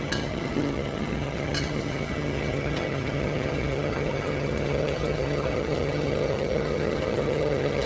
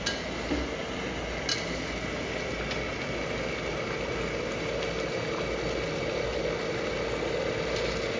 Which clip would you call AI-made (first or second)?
first